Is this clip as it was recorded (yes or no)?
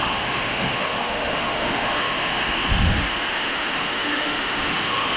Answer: no